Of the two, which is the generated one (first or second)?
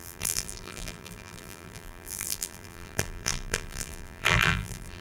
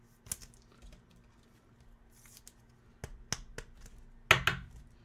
first